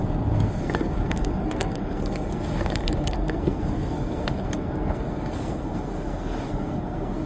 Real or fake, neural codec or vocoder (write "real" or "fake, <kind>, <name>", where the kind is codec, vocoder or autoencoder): fake, codec, SNAC